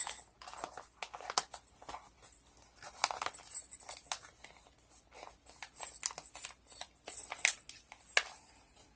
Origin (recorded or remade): recorded